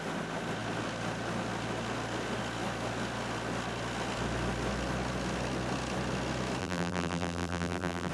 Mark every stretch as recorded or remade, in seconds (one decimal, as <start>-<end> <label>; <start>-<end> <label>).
0.0-6.6 recorded; 6.6-8.1 remade